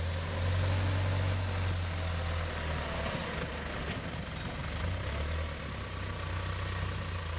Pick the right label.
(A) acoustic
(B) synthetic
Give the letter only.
A